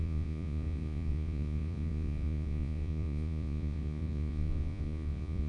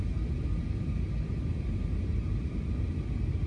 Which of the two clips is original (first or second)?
second